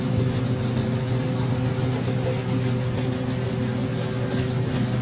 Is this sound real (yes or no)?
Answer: yes